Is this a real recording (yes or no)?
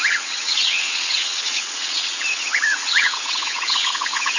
no